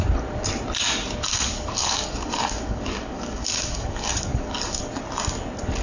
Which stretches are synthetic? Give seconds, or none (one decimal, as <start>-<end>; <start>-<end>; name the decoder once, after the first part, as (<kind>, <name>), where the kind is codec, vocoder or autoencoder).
1.3-4.8 (codec, DAC)